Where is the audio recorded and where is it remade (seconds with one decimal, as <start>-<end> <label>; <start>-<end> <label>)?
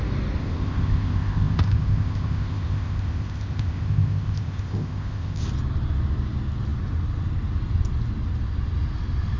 0.0-0.4 recorded; 0.4-5.4 remade; 5.4-9.4 recorded